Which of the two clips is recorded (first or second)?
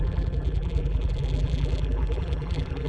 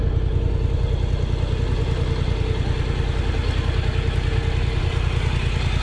second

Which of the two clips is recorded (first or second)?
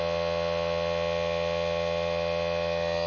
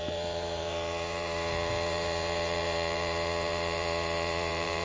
first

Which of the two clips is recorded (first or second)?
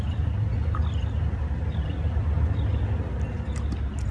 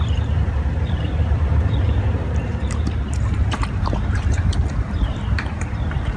first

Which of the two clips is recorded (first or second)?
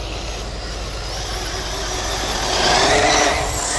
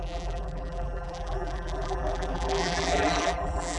first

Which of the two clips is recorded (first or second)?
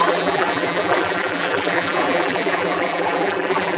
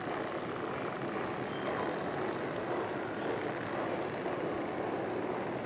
second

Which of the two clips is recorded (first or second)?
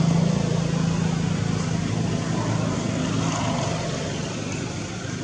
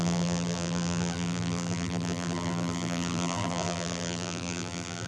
first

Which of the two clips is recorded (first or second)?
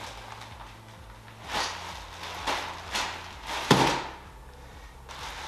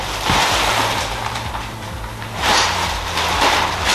first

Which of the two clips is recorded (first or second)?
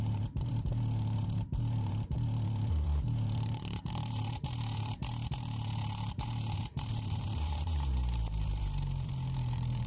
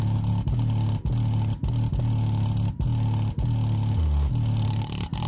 second